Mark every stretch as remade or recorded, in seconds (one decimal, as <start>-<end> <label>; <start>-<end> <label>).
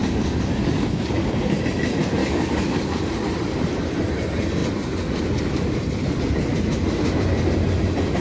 0.0-1.6 remade; 1.6-2.2 recorded; 2.2-3.1 remade; 3.1-8.2 recorded